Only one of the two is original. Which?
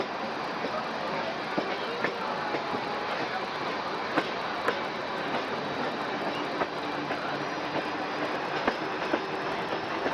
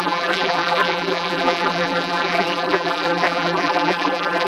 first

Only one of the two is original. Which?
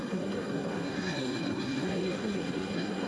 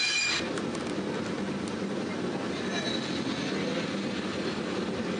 second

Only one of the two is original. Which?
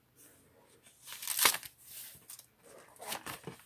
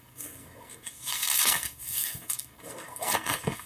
first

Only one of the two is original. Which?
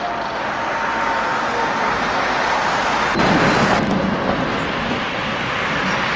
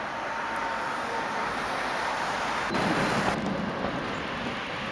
first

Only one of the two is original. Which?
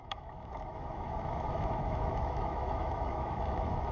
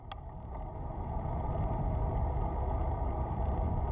second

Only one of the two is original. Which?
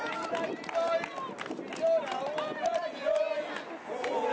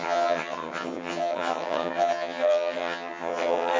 first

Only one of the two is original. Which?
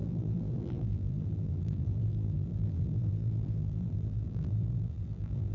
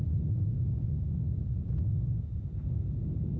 second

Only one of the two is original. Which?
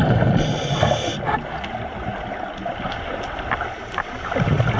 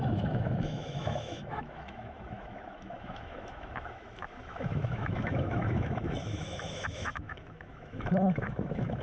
first